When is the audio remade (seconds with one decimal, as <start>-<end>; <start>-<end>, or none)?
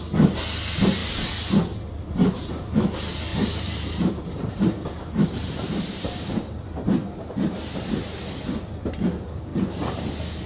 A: 3.3-7.2; 9.5-10.1